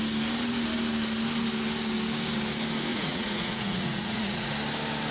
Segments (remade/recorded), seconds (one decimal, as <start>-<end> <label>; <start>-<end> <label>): 0.0-2.9 recorded; 2.9-4.5 remade; 4.5-5.1 recorded